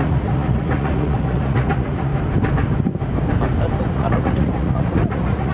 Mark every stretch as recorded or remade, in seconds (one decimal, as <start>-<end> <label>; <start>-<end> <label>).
0.0-2.1 remade; 2.1-3.8 recorded; 3.8-5.5 remade